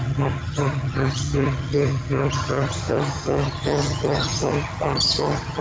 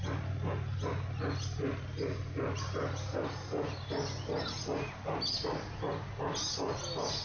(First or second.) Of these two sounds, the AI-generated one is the first